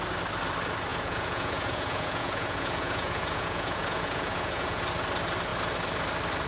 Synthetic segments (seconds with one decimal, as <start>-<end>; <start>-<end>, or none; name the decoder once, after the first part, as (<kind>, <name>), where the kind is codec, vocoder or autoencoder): 0.9-4.8 (vocoder, Vocos)